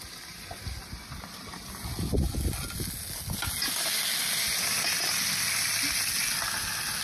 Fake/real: real